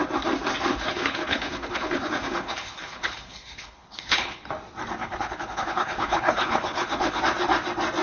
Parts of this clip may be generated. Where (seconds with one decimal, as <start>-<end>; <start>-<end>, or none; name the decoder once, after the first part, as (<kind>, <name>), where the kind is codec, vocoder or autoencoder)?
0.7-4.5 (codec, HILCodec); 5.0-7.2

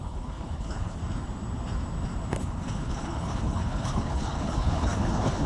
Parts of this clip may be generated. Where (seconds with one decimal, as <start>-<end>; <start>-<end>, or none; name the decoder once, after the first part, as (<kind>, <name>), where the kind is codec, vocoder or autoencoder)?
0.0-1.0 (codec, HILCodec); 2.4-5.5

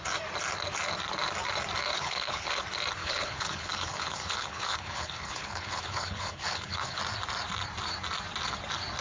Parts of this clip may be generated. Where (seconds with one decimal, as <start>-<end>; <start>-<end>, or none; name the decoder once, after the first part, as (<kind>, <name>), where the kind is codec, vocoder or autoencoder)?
1.9-2.6 (codec, HILCodec); 3.0-7.0

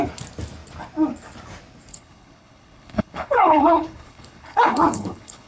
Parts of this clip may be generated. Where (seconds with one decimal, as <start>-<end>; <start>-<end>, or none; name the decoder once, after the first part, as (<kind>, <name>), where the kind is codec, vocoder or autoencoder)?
1.9-5.5 (codec, HILCodec)